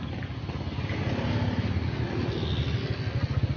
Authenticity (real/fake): real